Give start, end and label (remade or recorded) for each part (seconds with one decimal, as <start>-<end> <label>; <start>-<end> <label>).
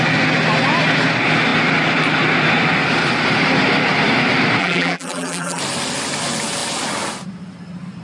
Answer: 0.0-4.6 recorded; 4.6-5.6 remade; 5.6-8.0 recorded